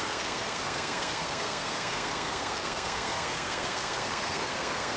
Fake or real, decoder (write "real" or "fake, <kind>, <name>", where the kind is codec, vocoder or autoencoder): fake, codec, SNAC